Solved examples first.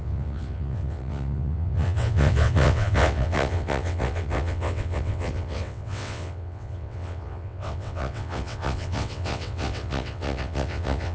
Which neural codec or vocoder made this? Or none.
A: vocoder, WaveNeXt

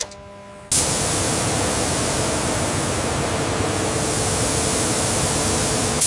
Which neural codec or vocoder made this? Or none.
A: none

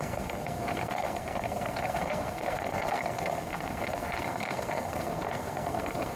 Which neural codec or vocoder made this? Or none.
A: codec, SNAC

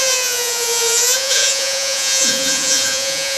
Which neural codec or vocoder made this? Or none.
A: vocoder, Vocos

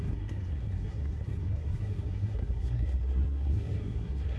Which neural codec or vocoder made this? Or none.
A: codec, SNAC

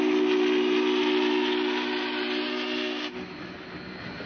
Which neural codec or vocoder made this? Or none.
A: none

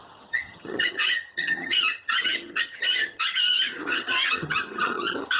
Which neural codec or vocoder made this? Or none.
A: vocoder, HiFi-GAN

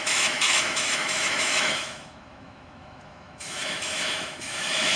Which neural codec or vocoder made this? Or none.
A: autoencoder, DAC-VAE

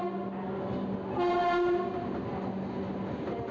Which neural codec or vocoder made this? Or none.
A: none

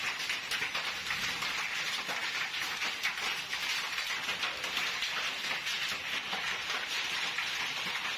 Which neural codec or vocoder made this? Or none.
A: none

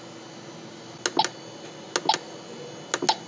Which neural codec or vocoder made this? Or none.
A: none